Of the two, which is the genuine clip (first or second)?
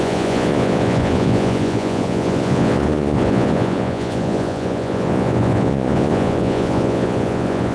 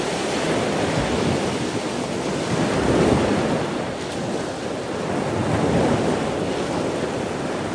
second